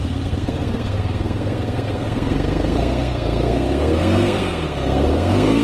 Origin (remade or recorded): remade